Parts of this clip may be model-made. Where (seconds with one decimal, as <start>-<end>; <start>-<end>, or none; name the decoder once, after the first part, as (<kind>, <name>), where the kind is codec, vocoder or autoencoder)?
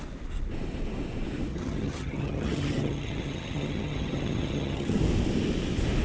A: 1.5-5.0 (vocoder, HiFi-GAN)